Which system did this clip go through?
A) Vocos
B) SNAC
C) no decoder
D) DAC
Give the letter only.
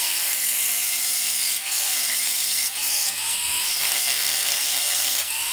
B